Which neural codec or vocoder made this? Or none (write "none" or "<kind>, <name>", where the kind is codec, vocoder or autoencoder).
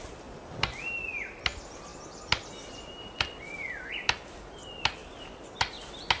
none